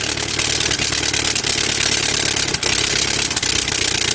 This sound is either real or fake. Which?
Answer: real